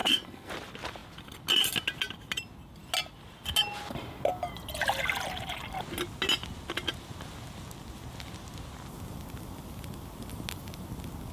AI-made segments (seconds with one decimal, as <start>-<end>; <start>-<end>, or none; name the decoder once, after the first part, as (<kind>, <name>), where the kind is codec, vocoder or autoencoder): 0.0-0.5 (codec, SNAC)